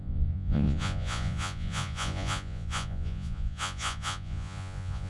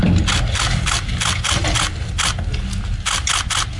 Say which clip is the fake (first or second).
first